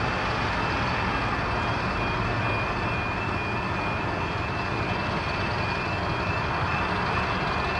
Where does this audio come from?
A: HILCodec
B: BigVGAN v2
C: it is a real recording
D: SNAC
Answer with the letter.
C